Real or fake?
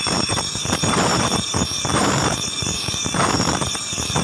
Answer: fake